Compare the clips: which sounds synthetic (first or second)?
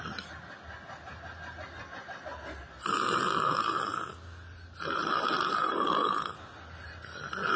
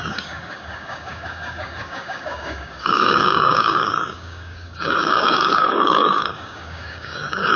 second